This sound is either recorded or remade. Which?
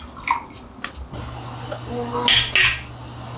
recorded